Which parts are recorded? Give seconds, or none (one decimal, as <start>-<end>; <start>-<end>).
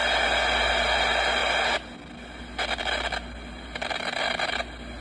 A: 0.0-5.0